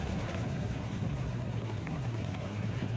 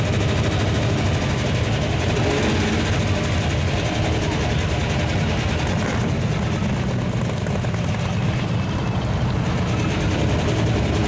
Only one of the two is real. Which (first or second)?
second